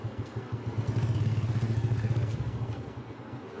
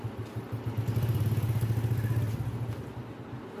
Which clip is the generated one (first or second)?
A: first